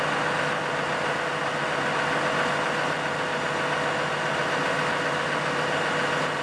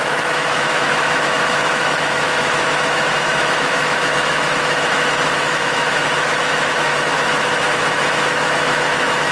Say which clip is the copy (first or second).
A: second